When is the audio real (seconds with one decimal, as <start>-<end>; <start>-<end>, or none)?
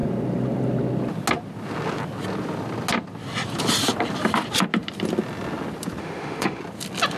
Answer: 0.0-6.0; 6.6-7.2